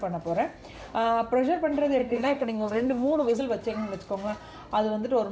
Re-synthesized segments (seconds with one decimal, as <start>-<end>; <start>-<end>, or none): 2.0-3.4